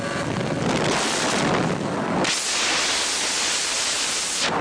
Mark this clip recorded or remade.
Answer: recorded